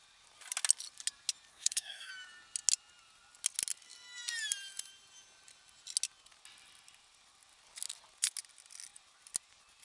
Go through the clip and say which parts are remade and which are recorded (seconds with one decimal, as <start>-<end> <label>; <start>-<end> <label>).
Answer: 0.0-1.5 recorded; 1.5-2.1 remade; 2.1-9.8 recorded